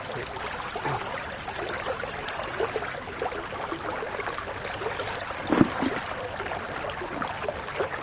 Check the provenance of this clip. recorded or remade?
recorded